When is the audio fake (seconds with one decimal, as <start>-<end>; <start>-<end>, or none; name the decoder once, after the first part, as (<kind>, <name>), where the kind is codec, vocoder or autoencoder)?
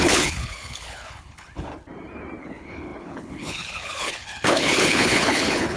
0.0-1.7 (codec, HILCodec); 2.4-5.8